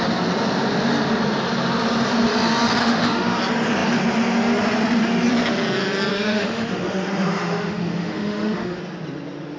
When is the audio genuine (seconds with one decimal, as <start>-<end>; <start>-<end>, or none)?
0.0-2.8; 3.4-6.1; 8.8-9.6